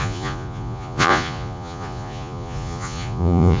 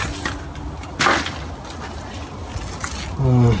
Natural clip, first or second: second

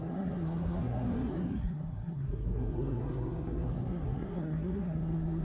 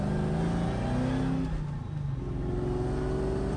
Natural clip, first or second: second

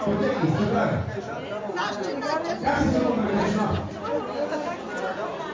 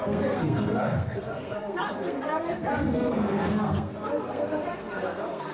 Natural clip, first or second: first